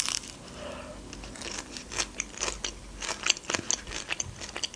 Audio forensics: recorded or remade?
recorded